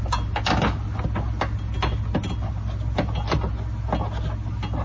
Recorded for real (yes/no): yes